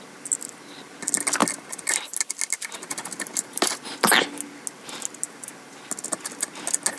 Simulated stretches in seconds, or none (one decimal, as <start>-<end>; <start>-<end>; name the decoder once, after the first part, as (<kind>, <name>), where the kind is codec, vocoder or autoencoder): none